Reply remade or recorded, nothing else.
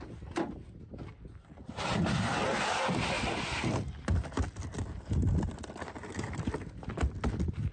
recorded